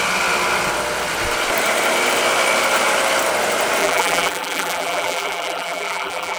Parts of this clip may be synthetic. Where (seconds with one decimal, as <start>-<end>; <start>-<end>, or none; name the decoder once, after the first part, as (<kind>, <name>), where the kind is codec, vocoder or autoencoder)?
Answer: 3.8-6.4 (vocoder, BigVGAN v2)